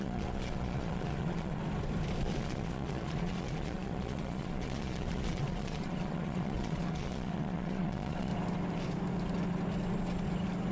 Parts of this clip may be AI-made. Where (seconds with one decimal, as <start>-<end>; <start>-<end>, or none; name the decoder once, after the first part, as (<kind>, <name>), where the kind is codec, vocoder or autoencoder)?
0.0-1.6 (vocoder, Vocos); 2.2-8.3